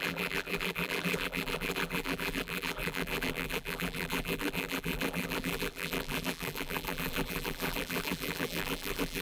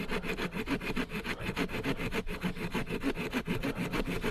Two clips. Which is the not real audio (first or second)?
first